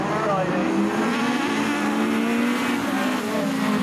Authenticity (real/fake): real